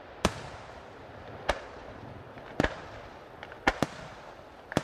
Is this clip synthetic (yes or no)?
no